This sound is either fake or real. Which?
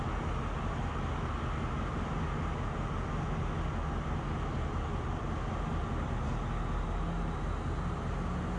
real